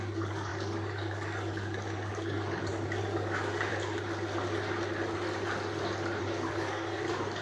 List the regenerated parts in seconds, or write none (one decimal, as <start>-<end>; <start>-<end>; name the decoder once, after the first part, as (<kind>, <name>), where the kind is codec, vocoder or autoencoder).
0.0-3.7 (codec, DAC); 6.2-7.4